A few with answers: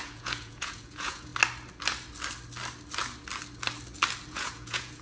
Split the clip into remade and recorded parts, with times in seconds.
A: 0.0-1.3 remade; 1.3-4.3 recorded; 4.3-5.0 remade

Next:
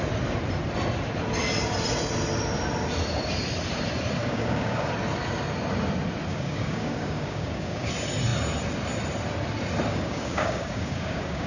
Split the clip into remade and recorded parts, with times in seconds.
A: 0.0-4.2 recorded; 4.2-4.9 remade; 4.9-6.3 recorded; 6.3-7.9 remade; 7.9-9.9 recorded; 9.9-11.5 remade

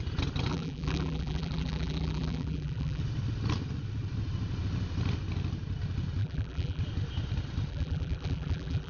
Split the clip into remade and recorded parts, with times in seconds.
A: 0.0-0.5 recorded; 0.5-3.0 remade; 3.0-6.2 recorded; 6.2-6.8 remade; 6.8-7.7 recorded; 7.7-8.9 remade